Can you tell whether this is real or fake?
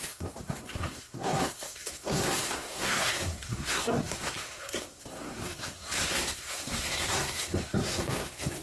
fake